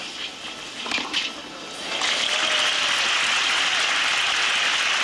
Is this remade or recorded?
recorded